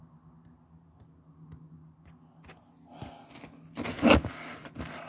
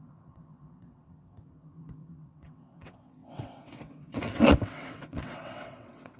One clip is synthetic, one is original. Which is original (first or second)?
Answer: first